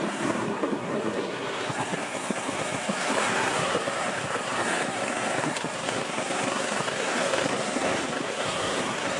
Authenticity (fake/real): fake